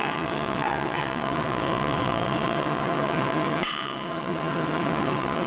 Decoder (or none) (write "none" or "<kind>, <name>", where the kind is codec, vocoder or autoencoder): vocoder, WaveNeXt